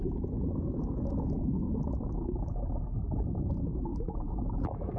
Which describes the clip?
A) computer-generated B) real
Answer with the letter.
A